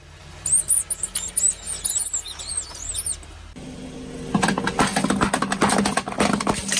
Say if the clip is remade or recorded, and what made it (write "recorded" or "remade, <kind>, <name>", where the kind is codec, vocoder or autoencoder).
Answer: recorded